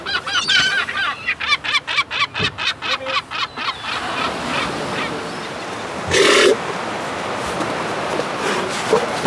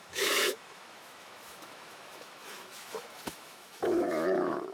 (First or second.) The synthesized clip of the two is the second